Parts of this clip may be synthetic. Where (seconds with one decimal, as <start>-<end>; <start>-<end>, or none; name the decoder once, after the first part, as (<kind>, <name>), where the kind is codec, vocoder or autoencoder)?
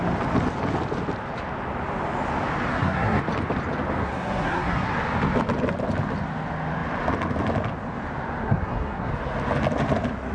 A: 2.7-3.2 (codec, SNAC); 4.0-4.9; 8.4-9.1